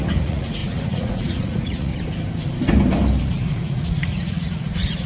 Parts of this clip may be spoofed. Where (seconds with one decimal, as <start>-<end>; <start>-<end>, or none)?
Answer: 0.0-1.9; 3.3-5.1